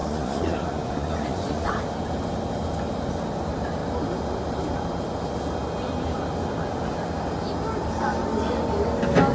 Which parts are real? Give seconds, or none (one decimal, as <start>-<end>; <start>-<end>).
1.7-9.3